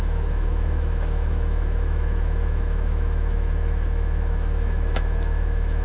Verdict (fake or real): fake